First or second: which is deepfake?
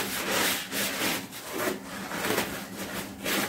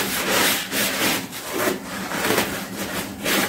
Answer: second